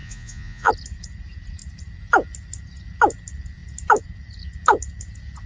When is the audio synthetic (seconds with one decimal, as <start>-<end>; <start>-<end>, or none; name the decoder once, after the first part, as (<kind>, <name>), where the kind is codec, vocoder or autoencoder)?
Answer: 0.0-0.7 (vocoder, Vocos)